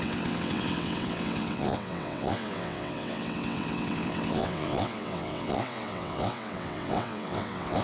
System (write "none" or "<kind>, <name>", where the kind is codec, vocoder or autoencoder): vocoder, WaveNeXt